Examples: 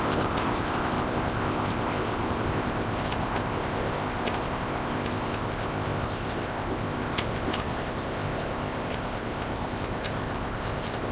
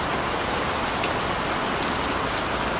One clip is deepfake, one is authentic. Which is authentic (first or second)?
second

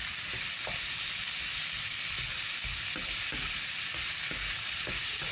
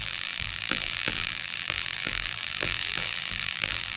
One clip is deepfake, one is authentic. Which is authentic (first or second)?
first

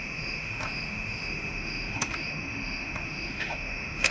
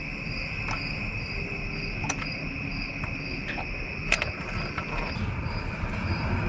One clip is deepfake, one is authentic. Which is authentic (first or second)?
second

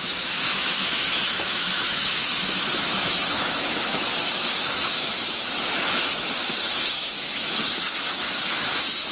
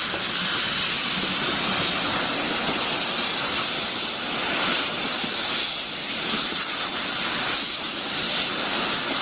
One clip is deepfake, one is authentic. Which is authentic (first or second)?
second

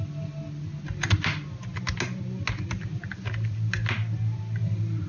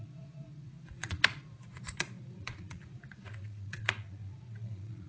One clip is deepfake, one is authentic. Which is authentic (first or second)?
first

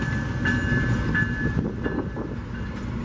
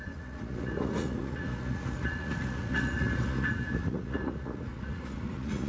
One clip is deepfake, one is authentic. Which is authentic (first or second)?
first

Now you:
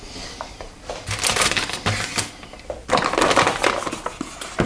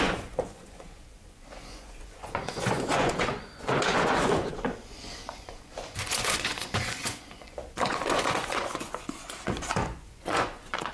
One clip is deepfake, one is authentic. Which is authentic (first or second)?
first